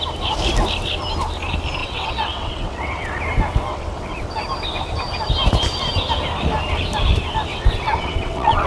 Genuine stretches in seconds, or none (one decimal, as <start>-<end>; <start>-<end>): 0.0-1.8; 3.2-3.7; 4.3-7.5